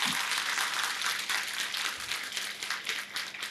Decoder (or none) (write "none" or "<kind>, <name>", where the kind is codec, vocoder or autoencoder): none